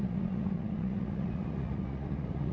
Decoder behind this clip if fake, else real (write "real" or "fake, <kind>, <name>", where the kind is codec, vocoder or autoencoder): fake, vocoder, Vocos